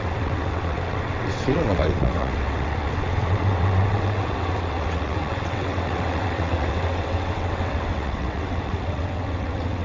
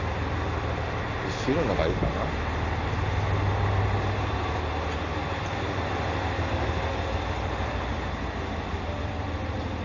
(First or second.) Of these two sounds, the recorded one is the second